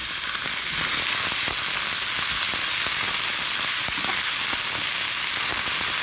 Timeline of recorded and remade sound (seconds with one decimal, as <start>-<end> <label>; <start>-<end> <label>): 0.0-6.0 recorded